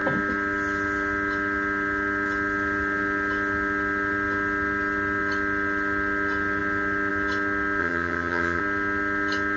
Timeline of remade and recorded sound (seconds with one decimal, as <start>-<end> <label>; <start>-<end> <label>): 0.0-7.8 recorded; 7.8-8.6 remade; 8.6-9.6 recorded